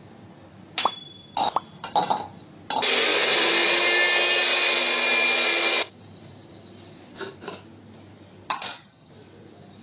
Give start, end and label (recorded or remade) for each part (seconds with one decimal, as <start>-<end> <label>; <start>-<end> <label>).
0.0-8.5 recorded; 8.5-9.1 remade; 9.1-9.8 recorded